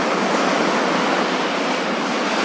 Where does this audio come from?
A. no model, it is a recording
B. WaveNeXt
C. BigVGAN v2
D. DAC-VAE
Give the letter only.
C